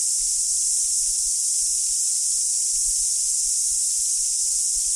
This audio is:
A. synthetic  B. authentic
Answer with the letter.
B